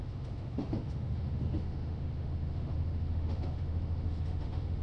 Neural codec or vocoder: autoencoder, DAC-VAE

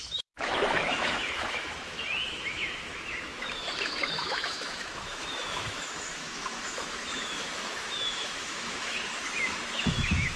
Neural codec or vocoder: autoencoder, DAC-VAE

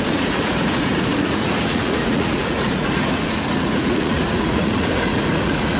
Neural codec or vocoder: vocoder, Vocos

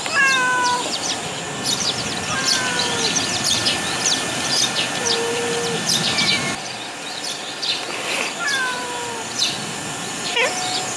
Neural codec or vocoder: none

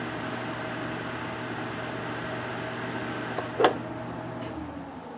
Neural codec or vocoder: none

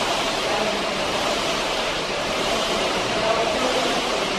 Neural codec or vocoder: vocoder, BigVGAN v2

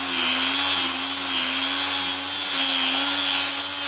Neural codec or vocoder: none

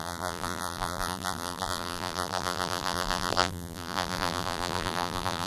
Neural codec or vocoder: vocoder, BigVGAN v2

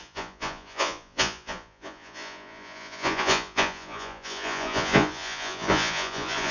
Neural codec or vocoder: vocoder, Vocos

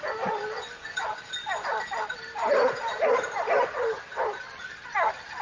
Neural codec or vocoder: none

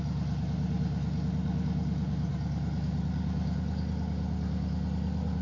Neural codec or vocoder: none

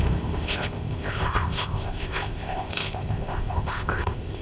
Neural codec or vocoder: codec, ZipCodec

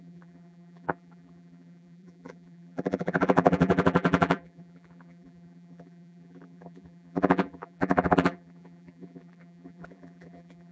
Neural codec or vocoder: vocoder, BigVGAN v2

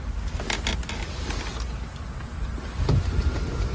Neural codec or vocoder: none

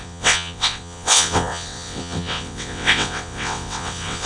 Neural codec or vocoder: vocoder, WaveNeXt